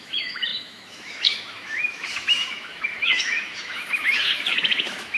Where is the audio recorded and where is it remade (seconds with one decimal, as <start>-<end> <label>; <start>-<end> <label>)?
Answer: 0.0-5.2 remade